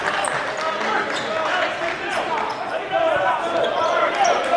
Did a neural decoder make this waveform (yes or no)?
no